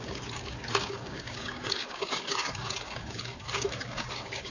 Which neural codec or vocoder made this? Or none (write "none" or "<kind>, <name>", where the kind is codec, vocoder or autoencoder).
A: codec, DAC